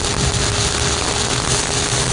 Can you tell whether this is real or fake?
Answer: real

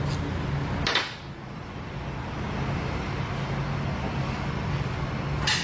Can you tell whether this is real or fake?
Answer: real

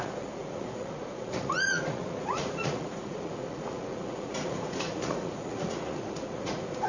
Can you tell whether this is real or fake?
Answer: fake